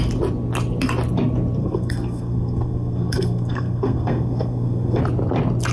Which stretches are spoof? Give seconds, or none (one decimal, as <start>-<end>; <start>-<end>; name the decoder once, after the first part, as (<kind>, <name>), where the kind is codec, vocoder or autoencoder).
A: 1.6-5.0 (codec, SNAC)